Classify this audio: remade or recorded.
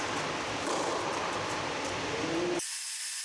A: recorded